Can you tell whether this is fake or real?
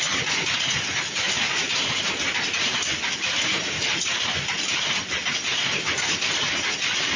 real